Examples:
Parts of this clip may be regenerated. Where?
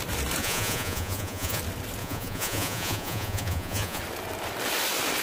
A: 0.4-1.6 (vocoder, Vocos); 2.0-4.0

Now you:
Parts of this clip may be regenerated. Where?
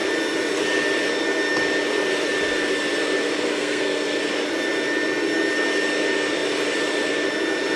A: 3.5-4.2 (codec, SNAC)